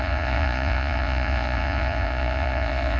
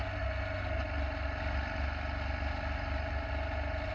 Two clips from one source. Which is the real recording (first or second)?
second